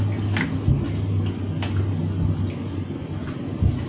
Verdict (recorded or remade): recorded